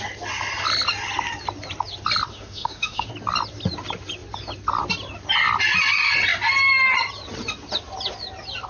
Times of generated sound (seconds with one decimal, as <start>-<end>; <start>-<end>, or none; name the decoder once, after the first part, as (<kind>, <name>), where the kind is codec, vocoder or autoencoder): 2.3-3.1 (autoencoder, DAC-VAE)